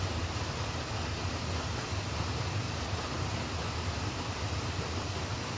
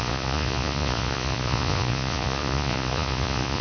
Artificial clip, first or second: second